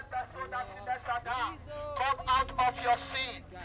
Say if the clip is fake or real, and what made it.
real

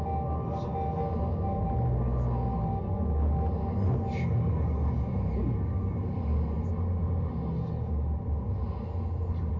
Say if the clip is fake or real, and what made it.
real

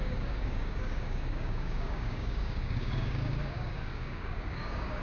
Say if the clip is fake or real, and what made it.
fake, codec, DAC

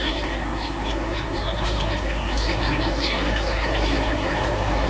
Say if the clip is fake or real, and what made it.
fake, codec, SNAC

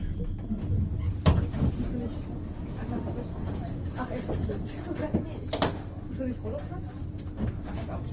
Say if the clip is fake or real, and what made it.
real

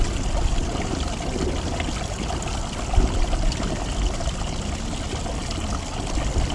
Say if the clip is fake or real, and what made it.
real